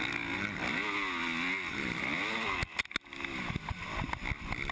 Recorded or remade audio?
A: recorded